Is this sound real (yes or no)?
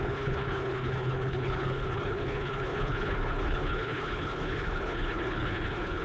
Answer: no